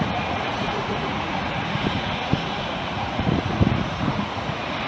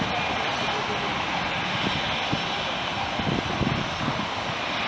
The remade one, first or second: first